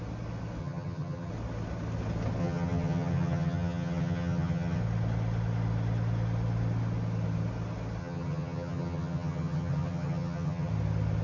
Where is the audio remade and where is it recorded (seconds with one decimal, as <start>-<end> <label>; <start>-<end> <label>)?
0.0-0.6 recorded; 0.6-1.3 remade; 1.3-2.4 recorded; 2.4-4.8 remade; 4.8-8.0 recorded; 8.0-10.7 remade; 10.7-11.2 recorded